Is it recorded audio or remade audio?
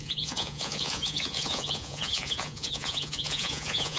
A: remade